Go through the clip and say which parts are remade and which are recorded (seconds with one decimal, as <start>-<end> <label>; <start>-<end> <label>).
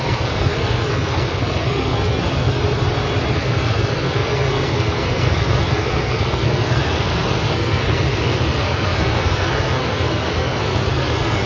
0.0-2.6 remade; 2.6-3.3 recorded; 3.3-11.5 remade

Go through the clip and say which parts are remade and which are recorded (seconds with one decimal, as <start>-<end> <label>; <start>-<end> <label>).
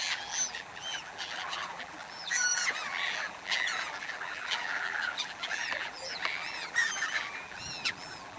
0.0-8.4 remade